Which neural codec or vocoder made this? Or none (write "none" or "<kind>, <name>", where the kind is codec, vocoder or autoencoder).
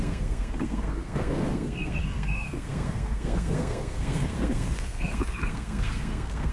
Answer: codec, SNAC